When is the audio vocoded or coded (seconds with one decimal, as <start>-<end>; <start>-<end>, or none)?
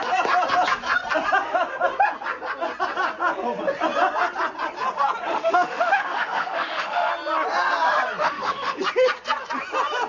5.3-7.1; 8.2-8.8